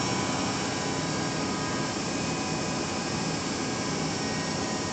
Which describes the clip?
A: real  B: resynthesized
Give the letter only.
A